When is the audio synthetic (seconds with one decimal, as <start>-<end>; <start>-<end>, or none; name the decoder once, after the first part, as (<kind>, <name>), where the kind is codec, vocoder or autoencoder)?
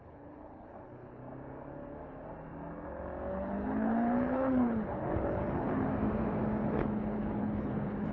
0.0-1.2 (codec, HILCodec); 3.3-5.9; 6.6-8.1